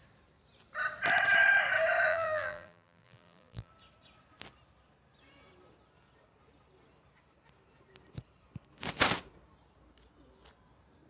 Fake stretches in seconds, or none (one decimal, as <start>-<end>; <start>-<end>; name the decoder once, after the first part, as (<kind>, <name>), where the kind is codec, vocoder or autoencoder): 2.1-3.7 (vocoder, BigVGAN v2)